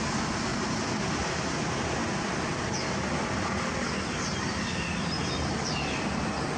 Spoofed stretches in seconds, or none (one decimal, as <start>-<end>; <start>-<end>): none